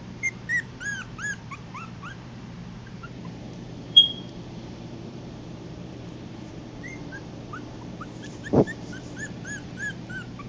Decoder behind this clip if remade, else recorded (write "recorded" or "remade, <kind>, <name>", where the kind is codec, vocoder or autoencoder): remade, vocoder, BigVGAN v2